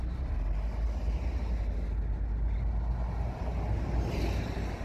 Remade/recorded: recorded